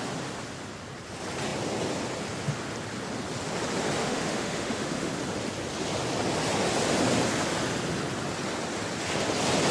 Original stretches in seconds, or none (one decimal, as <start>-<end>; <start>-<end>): 0.0-4.0; 5.1-9.7